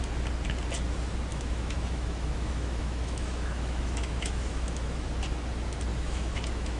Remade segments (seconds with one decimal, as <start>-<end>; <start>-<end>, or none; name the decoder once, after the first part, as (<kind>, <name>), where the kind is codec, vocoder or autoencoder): 1.3-5.1 (autoencoder, DAC-VAE); 5.9-6.8